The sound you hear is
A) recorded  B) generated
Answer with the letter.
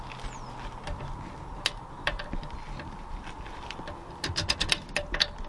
A